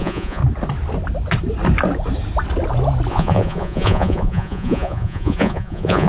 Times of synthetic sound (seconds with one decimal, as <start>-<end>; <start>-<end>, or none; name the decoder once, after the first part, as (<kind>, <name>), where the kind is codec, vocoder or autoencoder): 0.0-0.4 (vocoder, Vocos); 3.1-6.1